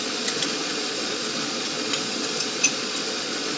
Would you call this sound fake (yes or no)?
yes